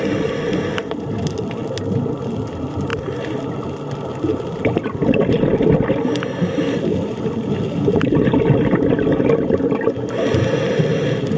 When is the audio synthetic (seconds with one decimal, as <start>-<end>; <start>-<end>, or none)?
none